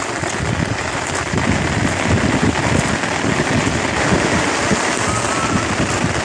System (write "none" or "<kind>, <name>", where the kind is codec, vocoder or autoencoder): none